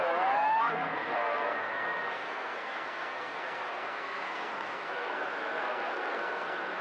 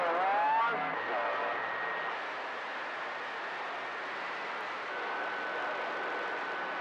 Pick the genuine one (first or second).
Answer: second